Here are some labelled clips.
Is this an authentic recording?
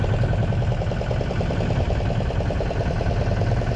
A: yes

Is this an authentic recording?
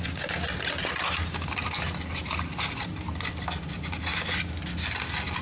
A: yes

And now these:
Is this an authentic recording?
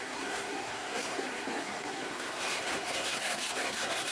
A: no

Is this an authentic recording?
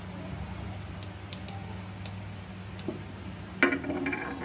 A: yes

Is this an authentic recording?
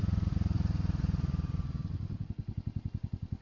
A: yes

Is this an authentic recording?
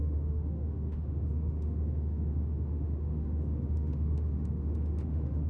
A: no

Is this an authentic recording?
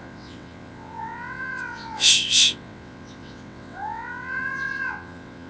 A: no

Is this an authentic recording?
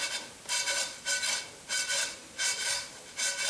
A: yes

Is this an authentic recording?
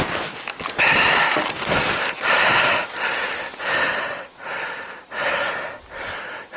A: yes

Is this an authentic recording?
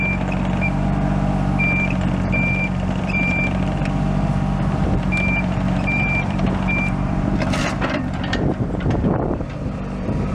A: no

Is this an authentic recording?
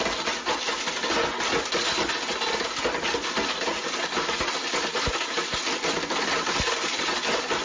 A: yes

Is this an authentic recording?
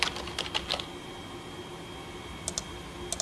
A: yes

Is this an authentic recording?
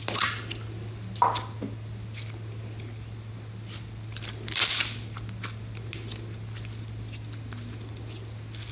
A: yes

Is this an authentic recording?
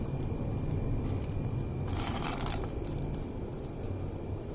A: no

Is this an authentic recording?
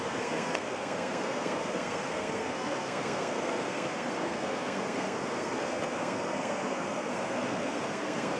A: no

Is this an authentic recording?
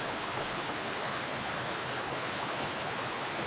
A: no